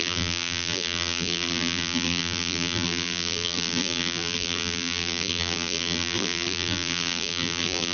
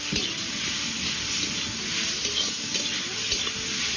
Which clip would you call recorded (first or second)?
second